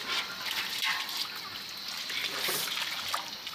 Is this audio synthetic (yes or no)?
no